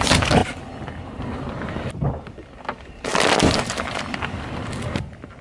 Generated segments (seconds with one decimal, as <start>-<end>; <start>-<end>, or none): 3.1-4.4

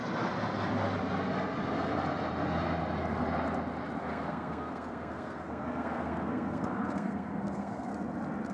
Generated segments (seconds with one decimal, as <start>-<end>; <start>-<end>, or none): 4.0-7.9

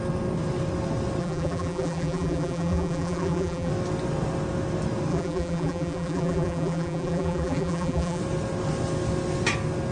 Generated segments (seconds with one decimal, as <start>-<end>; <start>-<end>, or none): 1.2-3.7; 5.1-8.2

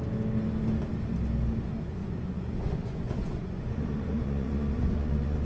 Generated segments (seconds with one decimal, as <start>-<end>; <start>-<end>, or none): 2.0-5.5

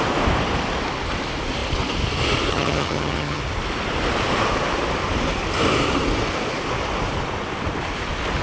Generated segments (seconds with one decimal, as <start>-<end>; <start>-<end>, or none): 2.5-3.4